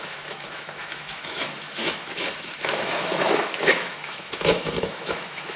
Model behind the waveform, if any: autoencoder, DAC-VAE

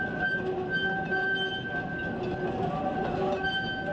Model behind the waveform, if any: none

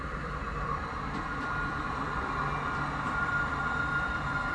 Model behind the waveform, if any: vocoder, BigVGAN v2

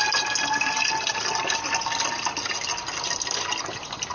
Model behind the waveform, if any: none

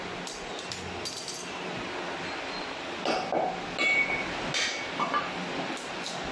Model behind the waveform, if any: none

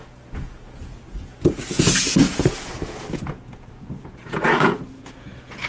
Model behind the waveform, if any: vocoder, Vocos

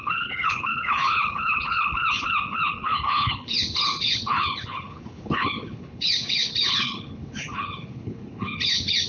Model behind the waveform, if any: codec, HILCodec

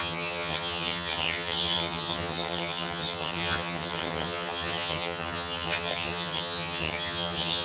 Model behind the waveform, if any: vocoder, HiFi-GAN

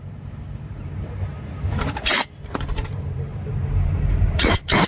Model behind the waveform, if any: vocoder, BigVGAN v2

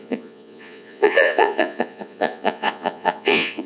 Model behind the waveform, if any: vocoder, Vocos